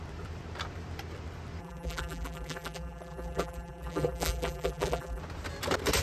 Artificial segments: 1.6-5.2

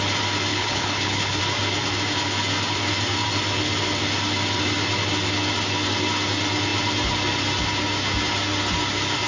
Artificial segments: 0.5-1.4

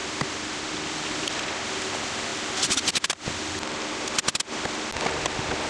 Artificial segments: 0.0-1.4

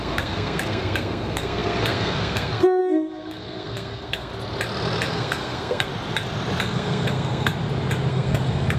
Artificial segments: 0.0-4.3; 5.1-5.9; 6.6-7.5; 8.1-8.8

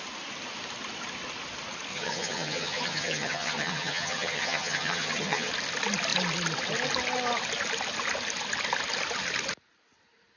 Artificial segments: 1.9-5.5

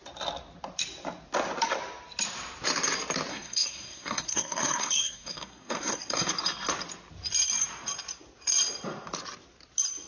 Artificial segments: 3.3-6.3